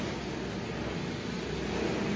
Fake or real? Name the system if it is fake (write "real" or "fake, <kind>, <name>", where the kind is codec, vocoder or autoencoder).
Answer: real